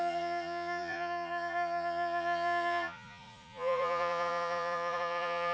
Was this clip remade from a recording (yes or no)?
yes